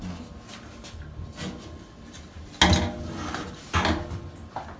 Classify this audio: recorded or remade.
recorded